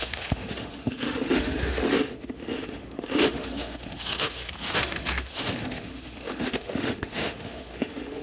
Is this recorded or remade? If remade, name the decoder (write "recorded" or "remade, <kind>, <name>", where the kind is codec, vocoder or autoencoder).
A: remade, autoencoder, DAC-VAE